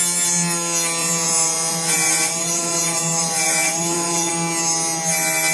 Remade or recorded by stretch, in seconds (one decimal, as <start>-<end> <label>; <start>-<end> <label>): 0.0-1.0 recorded; 1.0-4.3 remade; 4.3-5.5 recorded